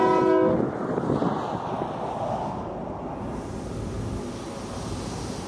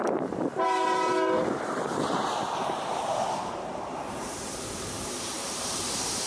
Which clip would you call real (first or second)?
first